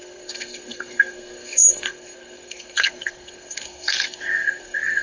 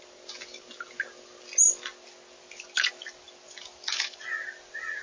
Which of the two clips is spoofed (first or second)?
first